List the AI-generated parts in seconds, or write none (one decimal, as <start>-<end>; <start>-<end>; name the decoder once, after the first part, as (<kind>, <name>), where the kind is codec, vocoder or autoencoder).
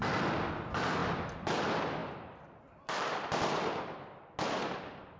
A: none